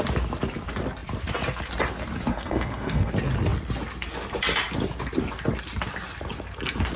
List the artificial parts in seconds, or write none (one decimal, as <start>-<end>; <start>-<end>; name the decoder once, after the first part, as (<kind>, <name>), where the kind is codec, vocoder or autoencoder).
2.3-3.1 (codec, SNAC)